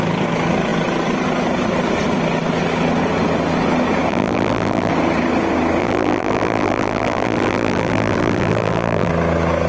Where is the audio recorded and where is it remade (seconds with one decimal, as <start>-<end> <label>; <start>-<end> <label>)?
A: 0.0-4.1 recorded; 4.1-4.9 remade; 4.9-5.8 recorded; 5.8-9.1 remade; 9.1-9.7 recorded